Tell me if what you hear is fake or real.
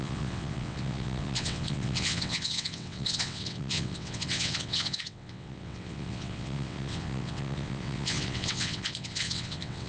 fake